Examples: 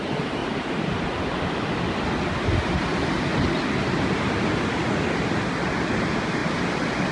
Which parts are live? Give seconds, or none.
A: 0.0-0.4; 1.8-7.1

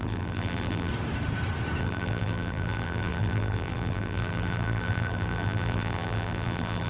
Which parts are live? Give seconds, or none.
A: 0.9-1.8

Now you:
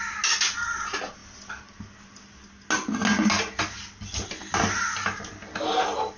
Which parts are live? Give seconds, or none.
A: 0.0-6.2

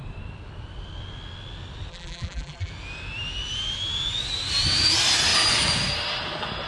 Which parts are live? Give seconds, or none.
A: 0.0-1.9; 2.7-6.7

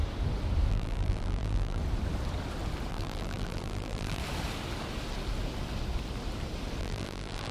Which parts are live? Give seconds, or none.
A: 0.0-0.7; 1.8-2.9; 4.2-6.8

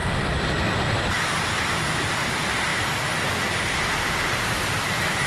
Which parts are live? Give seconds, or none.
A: none